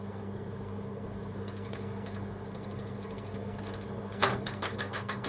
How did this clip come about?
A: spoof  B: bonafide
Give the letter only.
A